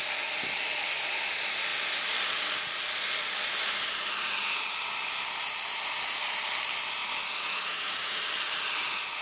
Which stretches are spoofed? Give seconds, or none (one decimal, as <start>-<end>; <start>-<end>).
7.4-8.2